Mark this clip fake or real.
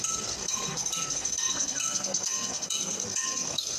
fake